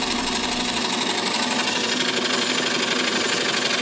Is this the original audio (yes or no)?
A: yes